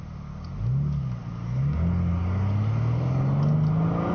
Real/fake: real